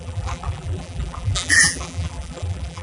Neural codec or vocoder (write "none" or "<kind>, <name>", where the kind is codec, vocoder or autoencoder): vocoder, BigVGAN v2